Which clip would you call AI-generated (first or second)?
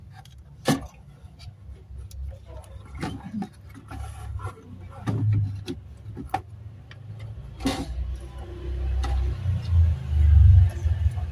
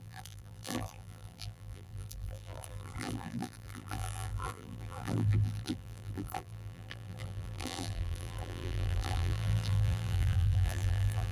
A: second